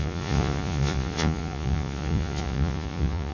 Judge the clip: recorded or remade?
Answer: remade